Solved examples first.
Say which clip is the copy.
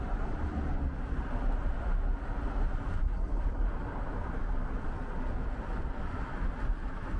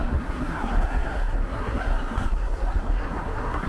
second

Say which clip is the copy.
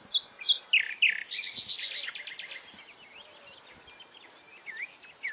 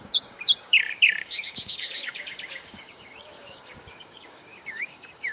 second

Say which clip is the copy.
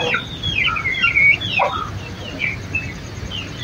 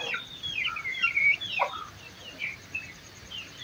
second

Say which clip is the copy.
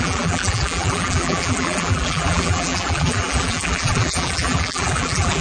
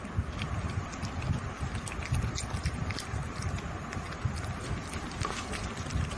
first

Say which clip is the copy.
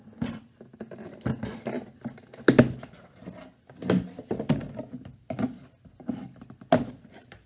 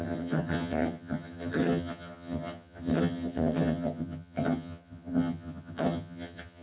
second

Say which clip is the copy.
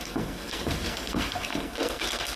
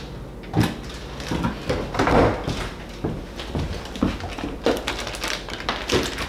first